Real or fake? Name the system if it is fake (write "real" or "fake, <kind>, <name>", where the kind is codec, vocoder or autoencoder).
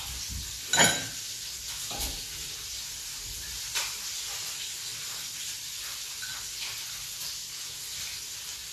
real